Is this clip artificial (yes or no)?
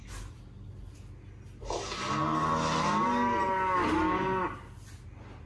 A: no